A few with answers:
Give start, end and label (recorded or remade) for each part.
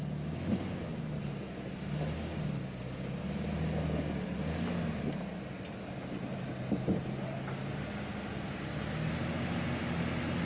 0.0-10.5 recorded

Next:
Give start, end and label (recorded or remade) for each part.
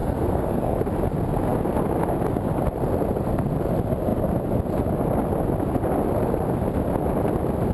0.0-0.8 remade; 0.8-7.7 recorded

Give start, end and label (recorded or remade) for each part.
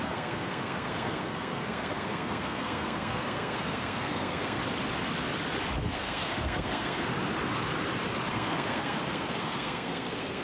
0.0-4.6 remade; 4.6-5.8 recorded; 5.8-7.1 remade; 7.1-8.3 recorded; 8.3-10.4 remade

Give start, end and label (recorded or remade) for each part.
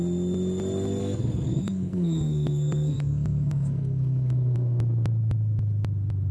0.0-1.0 recorded; 1.0-4.8 remade; 4.8-6.3 recorded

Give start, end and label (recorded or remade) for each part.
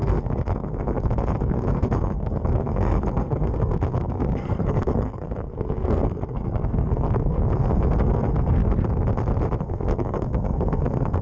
0.0-8.6 remade; 8.6-9.6 recorded; 9.6-11.2 remade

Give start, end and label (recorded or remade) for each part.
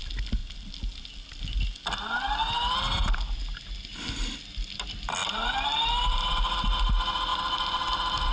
0.0-8.3 recorded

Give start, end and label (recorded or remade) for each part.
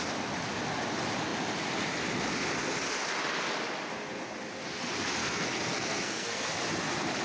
0.0-5.2 recorded; 5.2-6.5 remade; 6.5-7.2 recorded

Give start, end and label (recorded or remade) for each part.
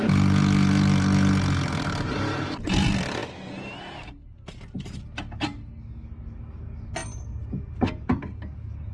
0.0-8.9 recorded